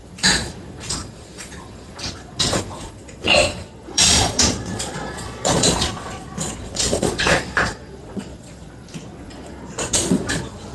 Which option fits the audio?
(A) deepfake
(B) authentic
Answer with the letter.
A